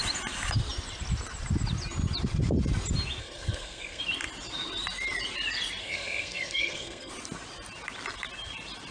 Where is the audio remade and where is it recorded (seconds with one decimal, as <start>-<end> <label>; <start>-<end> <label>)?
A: 0.0-3.2 recorded; 3.2-4.0 remade; 4.0-5.8 recorded; 5.8-7.1 remade; 7.1-8.9 recorded